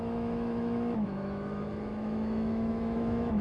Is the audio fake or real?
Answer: fake